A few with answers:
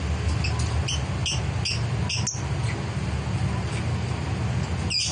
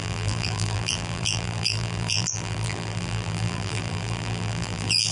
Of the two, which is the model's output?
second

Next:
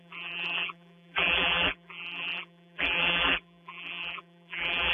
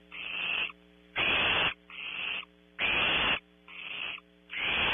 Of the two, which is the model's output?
first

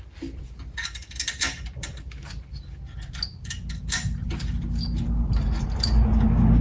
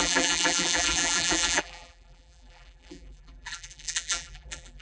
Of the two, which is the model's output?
second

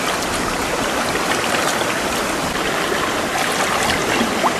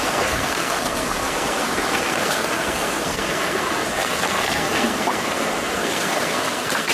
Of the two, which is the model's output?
second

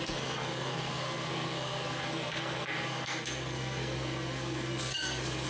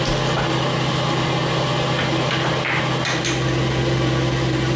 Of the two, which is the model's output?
first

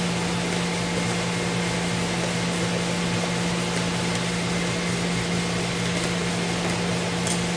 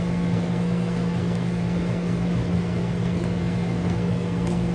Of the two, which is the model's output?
second